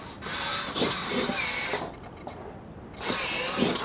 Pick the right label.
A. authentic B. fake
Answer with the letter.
A